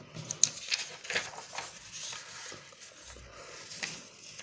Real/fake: real